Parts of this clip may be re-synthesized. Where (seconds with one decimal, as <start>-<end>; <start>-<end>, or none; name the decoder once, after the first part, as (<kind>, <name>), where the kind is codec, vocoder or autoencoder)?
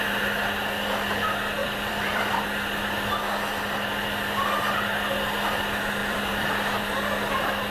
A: 1.6-2.4 (vocoder, BigVGAN v2); 6.0-6.5